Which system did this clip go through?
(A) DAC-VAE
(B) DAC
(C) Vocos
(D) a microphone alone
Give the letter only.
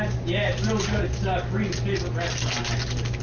D